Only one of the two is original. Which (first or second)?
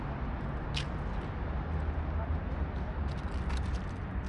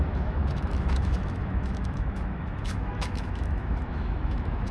first